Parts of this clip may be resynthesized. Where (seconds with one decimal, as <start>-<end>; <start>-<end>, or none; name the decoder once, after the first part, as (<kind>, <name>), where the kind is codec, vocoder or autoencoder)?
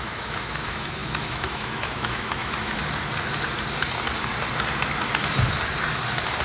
0.0-2.8 (autoencoder, DAC-VAE)